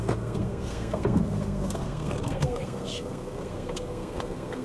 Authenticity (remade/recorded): remade